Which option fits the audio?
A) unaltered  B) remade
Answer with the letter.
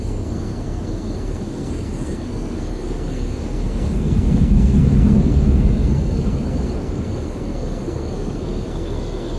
B